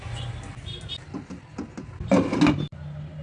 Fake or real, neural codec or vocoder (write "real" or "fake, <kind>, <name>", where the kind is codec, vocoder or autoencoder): real